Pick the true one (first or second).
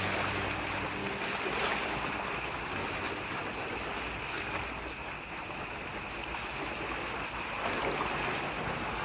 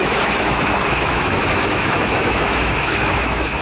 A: first